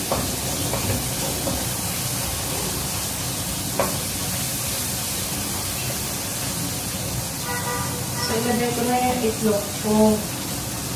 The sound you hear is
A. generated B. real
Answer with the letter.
B